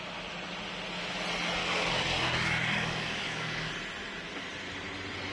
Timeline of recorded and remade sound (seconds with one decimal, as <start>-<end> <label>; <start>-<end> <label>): 0.0-1.6 recorded; 1.6-3.7 remade; 3.7-5.3 recorded